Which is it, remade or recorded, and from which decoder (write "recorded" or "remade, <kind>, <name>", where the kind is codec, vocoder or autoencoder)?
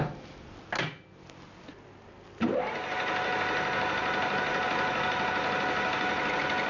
recorded